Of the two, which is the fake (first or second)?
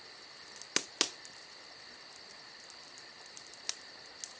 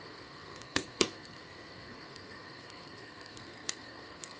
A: second